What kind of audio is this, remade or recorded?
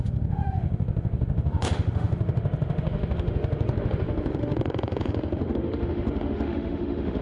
remade